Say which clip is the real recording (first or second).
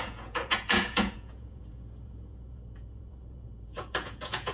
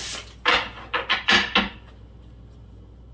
second